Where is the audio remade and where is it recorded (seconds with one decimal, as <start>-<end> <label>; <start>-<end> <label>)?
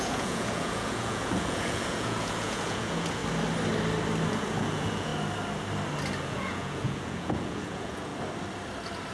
0.0-3.2 remade; 3.2-4.3 recorded; 4.3-5.1 remade; 5.1-6.2 recorded; 6.2-8.1 remade; 8.1-9.1 recorded